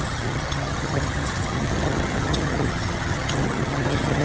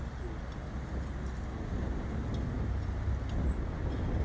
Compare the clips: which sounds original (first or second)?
second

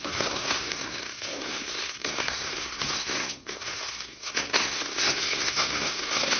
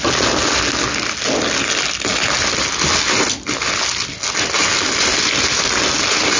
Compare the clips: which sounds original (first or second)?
second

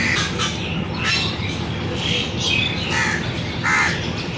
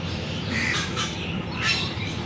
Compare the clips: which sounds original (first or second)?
first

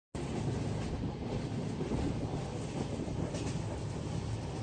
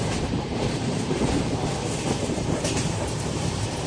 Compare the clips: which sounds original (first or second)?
first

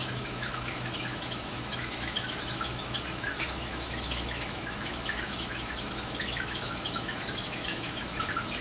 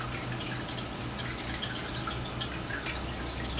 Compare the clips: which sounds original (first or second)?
second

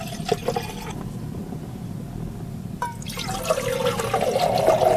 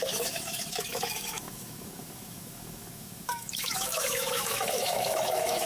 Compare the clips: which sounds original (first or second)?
first